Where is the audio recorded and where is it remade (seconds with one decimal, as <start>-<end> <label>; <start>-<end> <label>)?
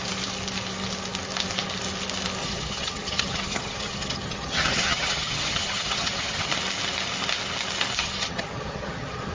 0.0-2.4 recorded; 2.4-6.5 remade; 6.5-8.0 recorded; 8.0-9.3 remade